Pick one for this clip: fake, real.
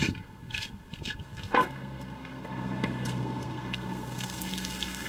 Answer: fake